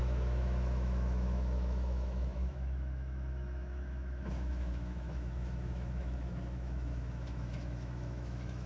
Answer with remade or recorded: remade